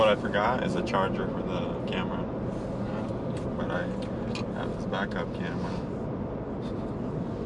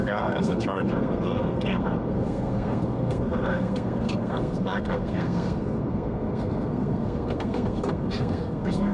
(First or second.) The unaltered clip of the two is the first